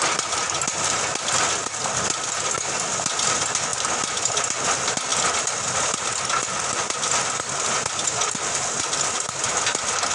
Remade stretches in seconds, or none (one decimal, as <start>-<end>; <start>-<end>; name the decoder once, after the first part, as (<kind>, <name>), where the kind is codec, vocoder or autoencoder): none